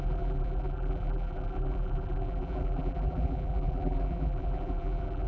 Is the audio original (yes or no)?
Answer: no